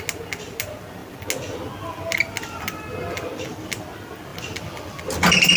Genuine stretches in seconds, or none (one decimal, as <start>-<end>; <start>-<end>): 0.0-5.6